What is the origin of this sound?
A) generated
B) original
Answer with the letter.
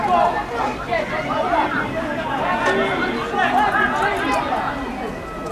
B